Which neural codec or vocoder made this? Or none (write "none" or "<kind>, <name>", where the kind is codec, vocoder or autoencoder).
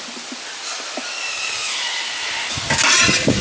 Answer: none